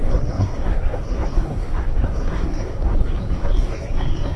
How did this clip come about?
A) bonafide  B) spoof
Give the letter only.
B